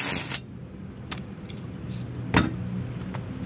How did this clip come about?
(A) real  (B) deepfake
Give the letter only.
A